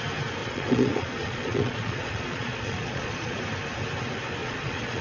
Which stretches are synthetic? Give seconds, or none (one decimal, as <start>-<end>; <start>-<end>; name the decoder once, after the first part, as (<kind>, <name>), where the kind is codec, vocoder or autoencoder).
0.4-3.4 (vocoder, Vocos); 4.4-5.0